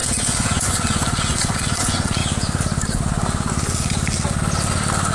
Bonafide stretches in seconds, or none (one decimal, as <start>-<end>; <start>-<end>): 2.2-5.1